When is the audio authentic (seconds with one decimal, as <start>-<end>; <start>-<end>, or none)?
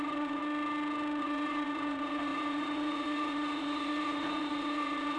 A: 0.4-1.2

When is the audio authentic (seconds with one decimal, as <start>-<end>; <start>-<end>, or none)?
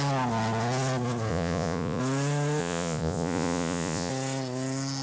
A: 0.0-1.3; 2.0-2.6; 4.1-5.0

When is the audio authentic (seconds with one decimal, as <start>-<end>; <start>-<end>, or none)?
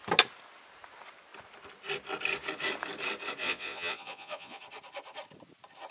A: 0.0-3.4; 4.6-5.9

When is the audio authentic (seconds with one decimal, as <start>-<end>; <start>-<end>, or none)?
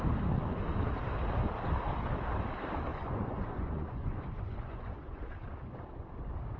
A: 0.0-2.9; 5.2-6.6